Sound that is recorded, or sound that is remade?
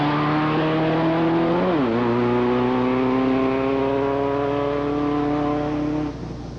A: recorded